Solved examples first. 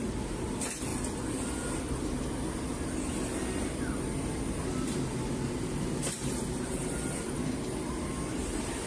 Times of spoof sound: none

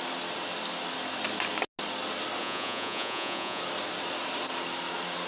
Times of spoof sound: 2.4-3.6 (vocoder, Vocos)

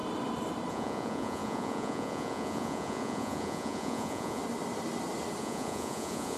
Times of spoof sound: 0.7-4.4 (vocoder, Vocos); 5.4-6.4

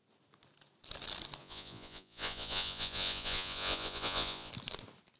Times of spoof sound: 1.4-4.5 (vocoder, Vocos)

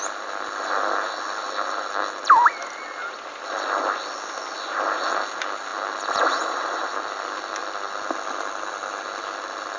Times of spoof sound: none

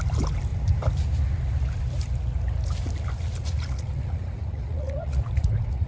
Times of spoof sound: 3.4-5.9 (vocoder, Vocos)

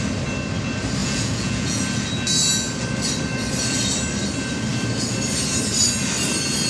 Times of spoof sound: 1.0-1.8 (vocoder, Vocos)